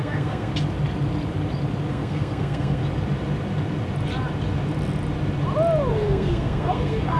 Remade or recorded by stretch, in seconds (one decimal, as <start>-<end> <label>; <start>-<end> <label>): 0.0-0.5 remade; 0.5-1.9 recorded; 1.9-2.8 remade; 2.8-5.9 recorded; 5.9-7.2 remade